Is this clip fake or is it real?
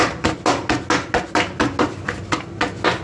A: real